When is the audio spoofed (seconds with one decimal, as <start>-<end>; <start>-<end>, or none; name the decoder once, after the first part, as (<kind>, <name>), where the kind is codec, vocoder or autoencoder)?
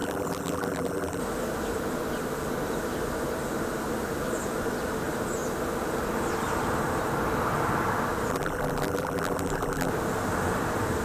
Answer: 0.0-1.2 (vocoder, BigVGAN v2); 8.3-9.9